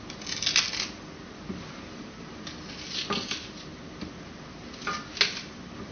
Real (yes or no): yes